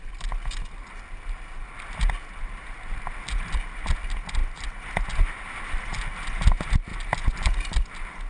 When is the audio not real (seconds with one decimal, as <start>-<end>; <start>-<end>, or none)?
none